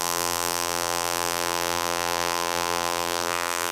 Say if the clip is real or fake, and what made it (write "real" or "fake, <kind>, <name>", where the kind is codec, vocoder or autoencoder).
fake, vocoder, BigVGAN v2